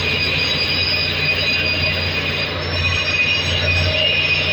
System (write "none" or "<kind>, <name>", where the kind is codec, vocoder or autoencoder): none